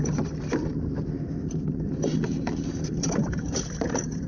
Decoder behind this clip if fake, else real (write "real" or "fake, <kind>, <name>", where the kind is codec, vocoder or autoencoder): fake, vocoder, BigVGAN v2